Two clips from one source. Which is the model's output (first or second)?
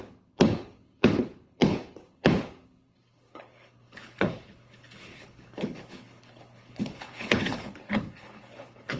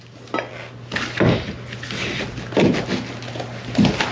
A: first